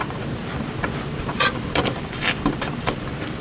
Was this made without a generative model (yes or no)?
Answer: no